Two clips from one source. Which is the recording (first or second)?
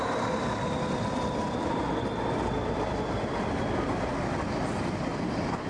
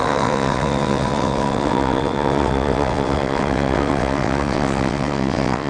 first